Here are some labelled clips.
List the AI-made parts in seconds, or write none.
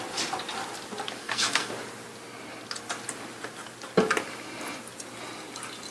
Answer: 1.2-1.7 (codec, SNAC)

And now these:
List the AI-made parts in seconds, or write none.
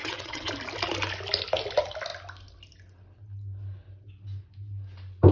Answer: 0.0-0.5 (vocoder, WaveNeXt)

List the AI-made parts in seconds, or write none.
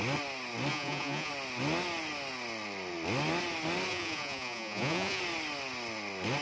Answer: 0.7-1.3 (vocoder, Vocos); 3.9-5.2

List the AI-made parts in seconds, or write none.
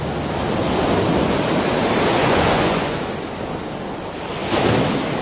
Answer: 2.1-3.0 (vocoder, Vocos)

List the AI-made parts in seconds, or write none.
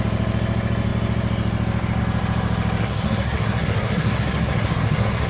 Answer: 2.8-5.3 (codec, SNAC)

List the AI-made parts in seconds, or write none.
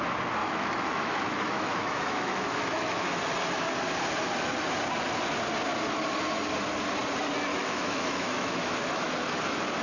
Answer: 0.4-3.2 (autoencoder, DAC-VAE); 7.5-9.1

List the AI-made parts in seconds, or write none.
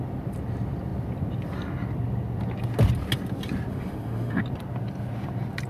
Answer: 3.7-4.4 (autoencoder, DAC-VAE)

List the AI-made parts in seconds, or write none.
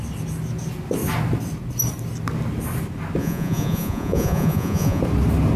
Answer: 3.2-5.0 (vocoder, Vocos)